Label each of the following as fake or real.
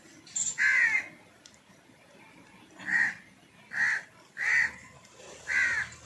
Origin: real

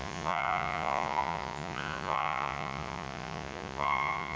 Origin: fake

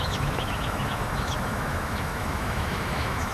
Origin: fake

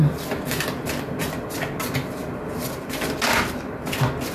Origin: real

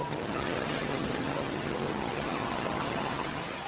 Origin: fake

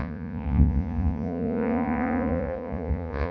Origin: fake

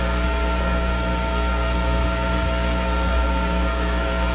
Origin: fake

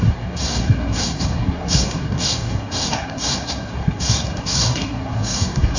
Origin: fake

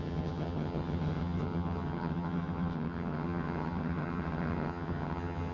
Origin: fake